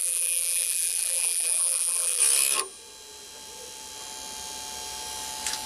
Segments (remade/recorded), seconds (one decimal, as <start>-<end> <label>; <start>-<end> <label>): 0.0-2.2 remade; 2.2-5.7 recorded